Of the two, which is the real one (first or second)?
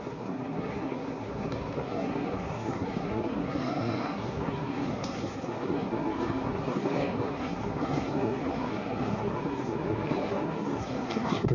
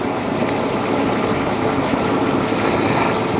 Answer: second